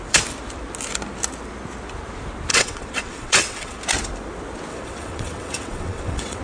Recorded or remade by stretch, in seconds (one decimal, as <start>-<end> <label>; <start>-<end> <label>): 0.0-2.5 recorded; 2.5-3.8 remade; 3.8-4.7 recorded; 4.7-6.4 remade